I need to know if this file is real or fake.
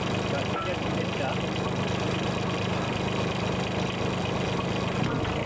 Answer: real